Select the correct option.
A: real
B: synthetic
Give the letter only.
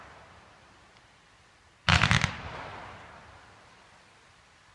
A